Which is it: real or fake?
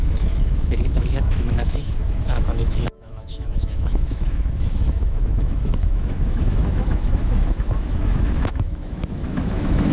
fake